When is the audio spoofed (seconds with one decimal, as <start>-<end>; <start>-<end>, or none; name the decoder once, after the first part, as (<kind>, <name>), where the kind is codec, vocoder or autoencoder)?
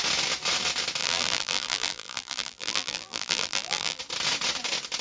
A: 1.0-4.0 (vocoder, BigVGAN v2)